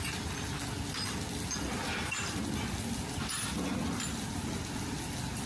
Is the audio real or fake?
real